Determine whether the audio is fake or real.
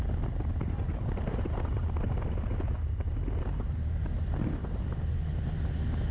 real